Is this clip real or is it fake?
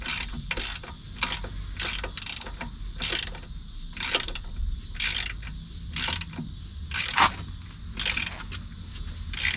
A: real